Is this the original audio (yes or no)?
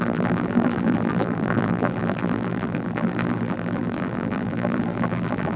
no